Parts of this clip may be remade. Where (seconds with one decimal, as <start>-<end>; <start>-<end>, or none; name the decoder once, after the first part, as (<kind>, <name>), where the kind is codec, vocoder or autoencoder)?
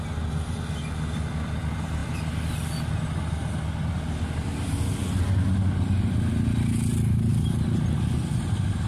none